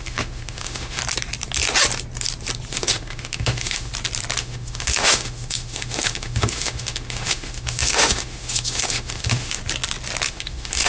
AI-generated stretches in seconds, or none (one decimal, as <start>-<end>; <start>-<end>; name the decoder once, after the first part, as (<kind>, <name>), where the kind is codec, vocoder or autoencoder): 0.0-1.0 (autoencoder, DAC-VAE); 2.7-3.9; 4.4-9.6; 10.3-10.9